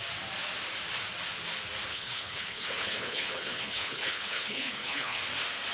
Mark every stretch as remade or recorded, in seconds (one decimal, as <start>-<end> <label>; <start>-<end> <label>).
0.0-1.9 recorded; 1.9-5.2 remade; 5.2-5.7 recorded